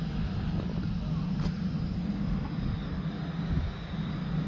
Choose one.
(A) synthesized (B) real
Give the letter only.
B